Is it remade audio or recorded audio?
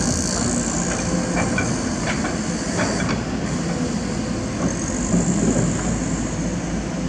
recorded